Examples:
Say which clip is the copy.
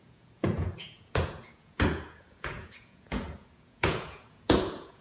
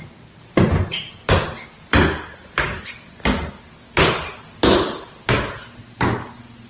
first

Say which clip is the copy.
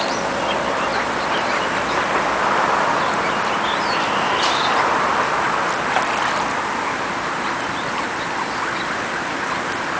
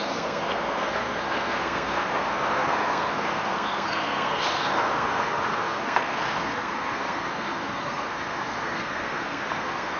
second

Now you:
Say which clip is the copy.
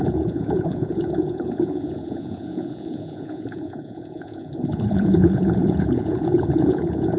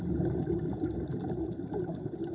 first